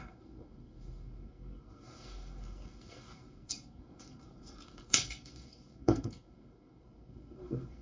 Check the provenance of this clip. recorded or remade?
remade